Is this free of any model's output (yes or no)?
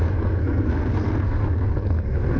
no